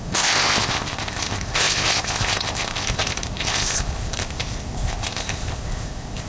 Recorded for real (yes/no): no